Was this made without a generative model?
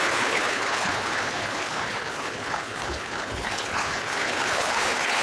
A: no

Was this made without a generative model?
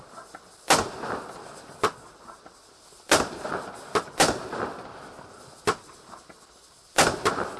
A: yes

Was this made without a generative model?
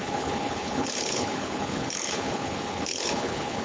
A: no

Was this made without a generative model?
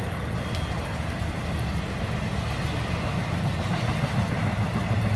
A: yes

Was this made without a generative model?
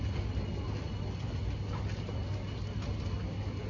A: yes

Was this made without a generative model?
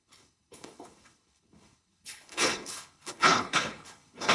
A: no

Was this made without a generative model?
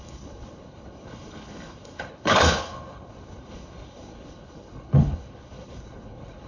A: no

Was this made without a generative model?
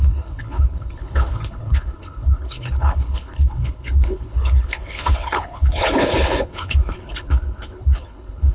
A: no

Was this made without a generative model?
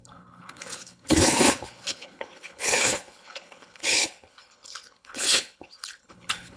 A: no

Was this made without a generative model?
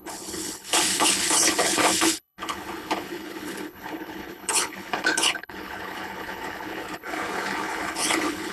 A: no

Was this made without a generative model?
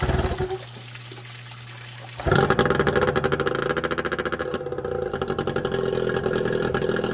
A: yes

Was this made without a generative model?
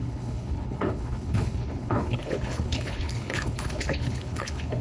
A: no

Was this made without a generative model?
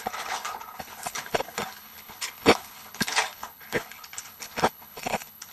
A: no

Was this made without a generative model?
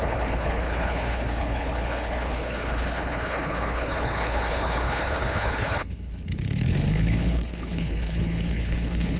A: no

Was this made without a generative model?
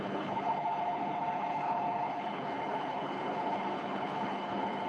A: no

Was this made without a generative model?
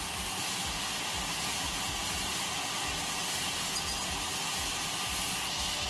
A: yes